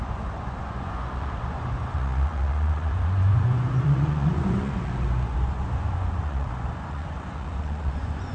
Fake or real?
fake